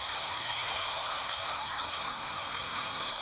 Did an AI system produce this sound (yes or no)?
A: yes